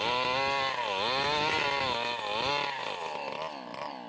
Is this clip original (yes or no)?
yes